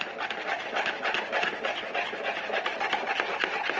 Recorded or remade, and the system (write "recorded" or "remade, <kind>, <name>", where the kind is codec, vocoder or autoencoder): recorded